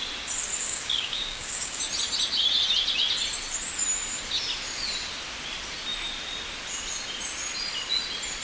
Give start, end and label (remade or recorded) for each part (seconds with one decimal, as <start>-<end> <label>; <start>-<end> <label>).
0.0-0.6 recorded; 0.6-1.8 remade; 1.8-8.4 recorded